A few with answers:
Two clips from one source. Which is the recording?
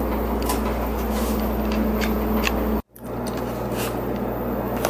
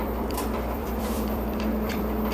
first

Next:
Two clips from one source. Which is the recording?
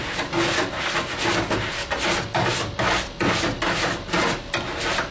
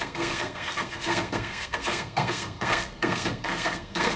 first